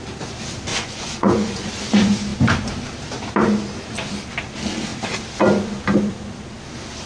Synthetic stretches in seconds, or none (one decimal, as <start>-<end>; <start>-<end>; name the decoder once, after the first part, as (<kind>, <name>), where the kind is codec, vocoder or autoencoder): 0.7-1.7 (vocoder, Vocos)